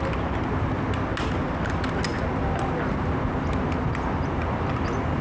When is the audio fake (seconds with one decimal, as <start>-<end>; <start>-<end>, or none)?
none